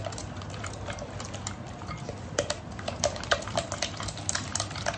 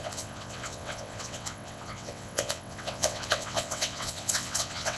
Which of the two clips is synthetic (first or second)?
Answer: second